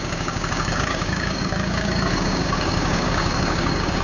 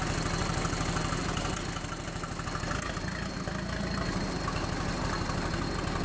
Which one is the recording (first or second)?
second